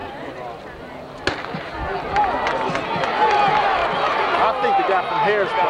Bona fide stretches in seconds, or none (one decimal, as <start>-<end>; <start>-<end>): 0.0-5.7